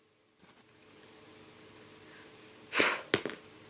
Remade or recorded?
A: recorded